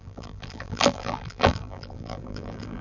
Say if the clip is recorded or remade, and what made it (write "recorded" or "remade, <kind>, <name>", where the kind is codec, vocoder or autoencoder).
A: remade, vocoder, BigVGAN v2